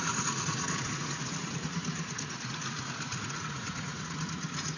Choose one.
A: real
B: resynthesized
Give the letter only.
B